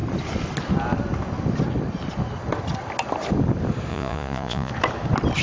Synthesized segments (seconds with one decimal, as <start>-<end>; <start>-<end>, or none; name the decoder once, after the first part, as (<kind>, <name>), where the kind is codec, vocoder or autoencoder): 3.9-4.7 (vocoder, Vocos)